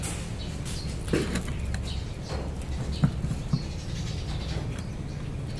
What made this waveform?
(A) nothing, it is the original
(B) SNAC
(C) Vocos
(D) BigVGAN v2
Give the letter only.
A